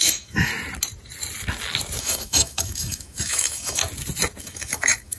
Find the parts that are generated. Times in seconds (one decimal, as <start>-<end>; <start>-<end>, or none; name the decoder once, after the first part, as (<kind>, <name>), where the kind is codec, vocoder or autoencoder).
0.0-0.5 (autoencoder, DAC-VAE); 2.0-3.8; 4.4-5.2